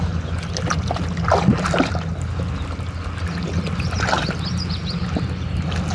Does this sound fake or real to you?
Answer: real